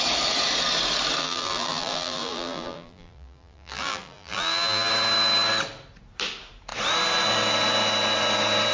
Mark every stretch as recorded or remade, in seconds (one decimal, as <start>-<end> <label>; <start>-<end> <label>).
0.0-1.2 recorded; 1.2-4.9 remade; 4.9-8.7 recorded